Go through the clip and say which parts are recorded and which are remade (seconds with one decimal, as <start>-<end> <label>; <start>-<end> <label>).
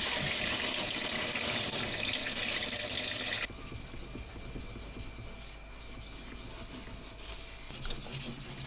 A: 0.0-6.5 recorded; 6.5-7.4 remade; 7.4-8.7 recorded